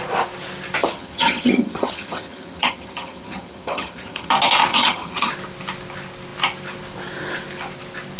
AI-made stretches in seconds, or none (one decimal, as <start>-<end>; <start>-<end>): 0.8-4.3; 4.7-5.3